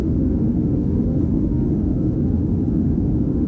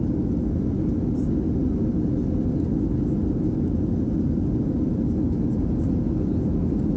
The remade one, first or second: first